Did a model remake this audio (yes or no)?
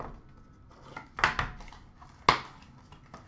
no